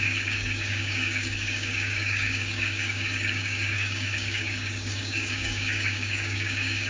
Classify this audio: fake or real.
fake